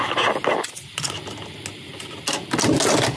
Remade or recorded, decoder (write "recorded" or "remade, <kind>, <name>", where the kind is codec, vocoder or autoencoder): recorded